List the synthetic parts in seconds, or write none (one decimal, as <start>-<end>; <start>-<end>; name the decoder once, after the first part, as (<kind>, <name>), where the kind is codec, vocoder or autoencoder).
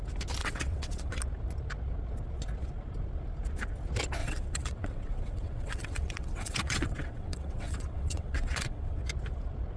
0.4-1.2 (vocoder, WaveNeXt); 4.2-9.0